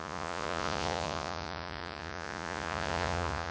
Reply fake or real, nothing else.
fake